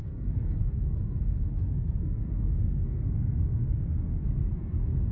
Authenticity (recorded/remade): remade